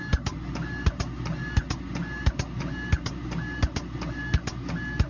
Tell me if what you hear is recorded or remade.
recorded